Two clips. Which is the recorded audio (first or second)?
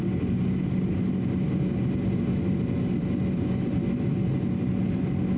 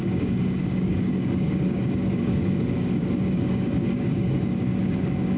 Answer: first